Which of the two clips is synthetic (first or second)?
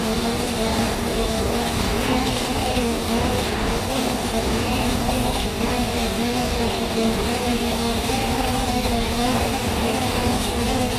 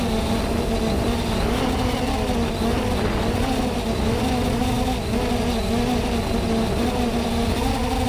first